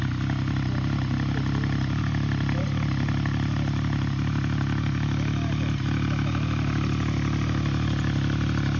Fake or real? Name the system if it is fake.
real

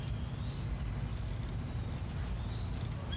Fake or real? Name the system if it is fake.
real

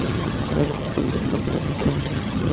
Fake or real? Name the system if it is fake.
fake, vocoder, HiFi-GAN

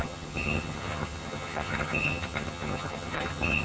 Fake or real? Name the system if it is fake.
fake, vocoder, HiFi-GAN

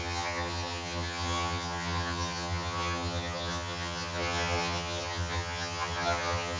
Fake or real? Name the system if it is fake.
fake, vocoder, HiFi-GAN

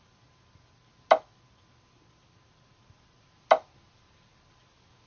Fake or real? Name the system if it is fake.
real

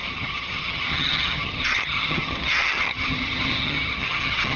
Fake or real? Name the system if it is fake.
fake, vocoder, HiFi-GAN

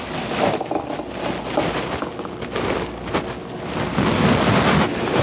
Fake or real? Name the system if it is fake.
real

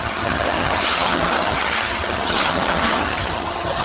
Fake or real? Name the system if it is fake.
fake, vocoder, HiFi-GAN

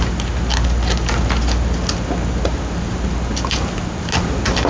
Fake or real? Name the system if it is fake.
real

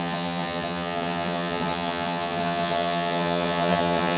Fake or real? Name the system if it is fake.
fake, vocoder, HiFi-GAN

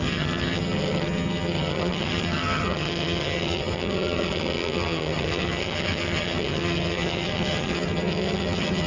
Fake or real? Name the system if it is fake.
fake, vocoder, HiFi-GAN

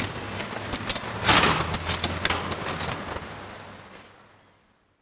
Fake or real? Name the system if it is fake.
real